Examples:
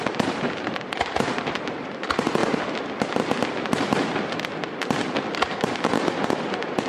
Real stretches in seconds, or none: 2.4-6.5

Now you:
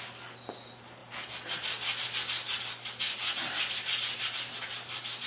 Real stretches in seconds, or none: 0.0-5.3

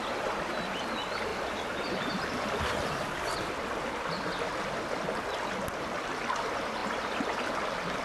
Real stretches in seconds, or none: 0.0-1.3; 3.3-8.0

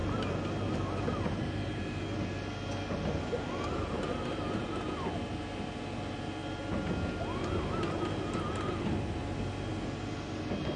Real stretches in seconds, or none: 1.8-10.8

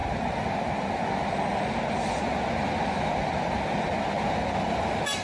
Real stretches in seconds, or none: 0.0-5.2

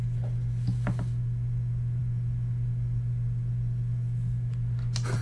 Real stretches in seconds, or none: 0.0-5.2

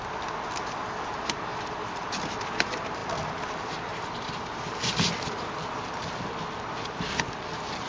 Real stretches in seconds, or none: 0.0-1.5; 2.2-7.9